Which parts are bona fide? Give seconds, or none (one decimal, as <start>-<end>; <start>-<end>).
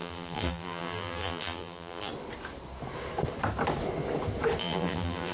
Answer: 2.1-4.6